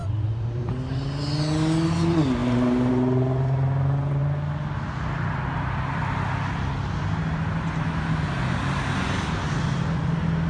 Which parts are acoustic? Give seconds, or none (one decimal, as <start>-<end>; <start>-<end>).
0.7-10.5